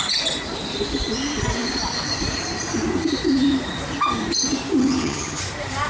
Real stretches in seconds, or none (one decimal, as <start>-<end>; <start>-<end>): 0.0-4.8; 5.4-5.9